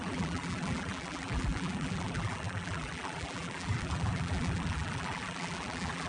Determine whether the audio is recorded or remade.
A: remade